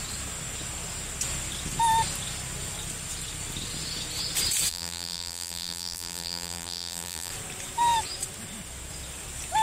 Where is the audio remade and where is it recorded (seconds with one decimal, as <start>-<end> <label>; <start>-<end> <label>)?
0.0-4.7 recorded; 4.7-7.3 remade; 7.3-9.6 recorded